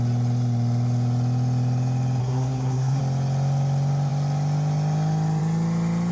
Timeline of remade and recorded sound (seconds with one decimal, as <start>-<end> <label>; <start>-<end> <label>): 0.0-2.2 recorded; 2.2-3.0 remade; 3.0-6.1 recorded